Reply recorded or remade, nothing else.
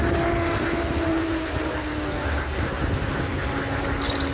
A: recorded